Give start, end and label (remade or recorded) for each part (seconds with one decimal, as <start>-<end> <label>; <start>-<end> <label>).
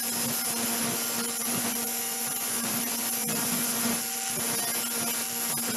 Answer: 0.0-1.4 recorded; 1.4-3.9 remade; 3.9-5.8 recorded